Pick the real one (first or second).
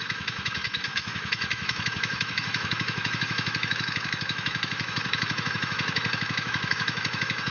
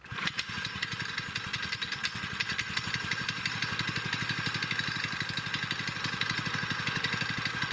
second